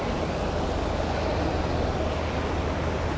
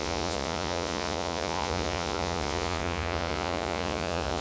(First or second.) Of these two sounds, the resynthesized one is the second